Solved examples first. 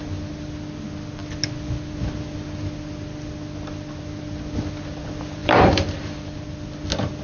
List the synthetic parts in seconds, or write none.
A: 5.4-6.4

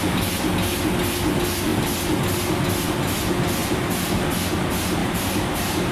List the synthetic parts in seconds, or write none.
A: 5.0-5.9

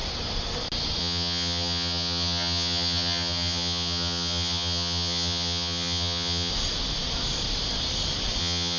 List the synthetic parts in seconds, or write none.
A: 1.0-6.5; 8.4-8.8

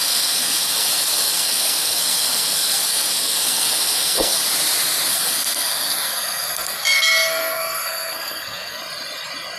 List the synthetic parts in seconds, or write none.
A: 0.0-4.4; 5.1-8.8

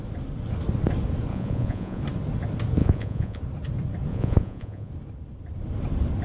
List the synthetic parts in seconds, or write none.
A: 1.3-2.0; 2.8-3.4; 4.1-4.9

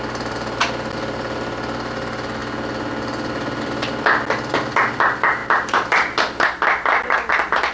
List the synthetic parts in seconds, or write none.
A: none

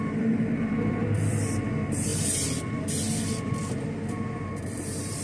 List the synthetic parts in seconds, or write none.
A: 0.0-5.2

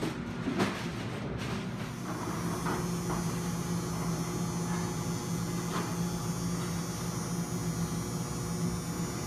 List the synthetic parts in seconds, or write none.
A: none